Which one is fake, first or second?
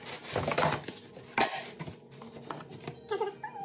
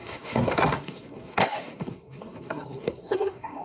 second